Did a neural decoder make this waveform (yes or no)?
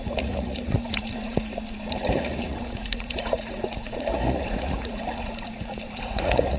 yes